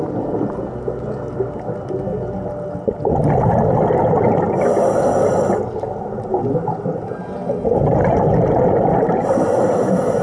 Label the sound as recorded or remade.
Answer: recorded